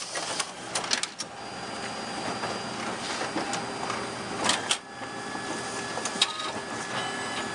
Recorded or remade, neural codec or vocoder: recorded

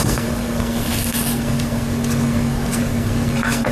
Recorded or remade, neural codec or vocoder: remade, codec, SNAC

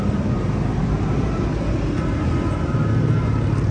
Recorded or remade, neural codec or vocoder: recorded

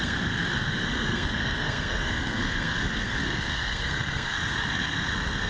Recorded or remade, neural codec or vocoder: remade, codec, SNAC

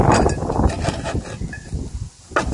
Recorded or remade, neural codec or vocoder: recorded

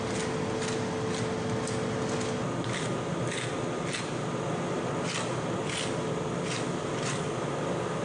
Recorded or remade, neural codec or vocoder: recorded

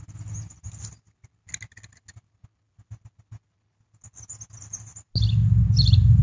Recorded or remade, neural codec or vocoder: recorded